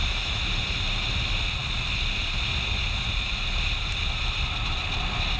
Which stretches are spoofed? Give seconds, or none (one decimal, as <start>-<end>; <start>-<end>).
0.0-0.5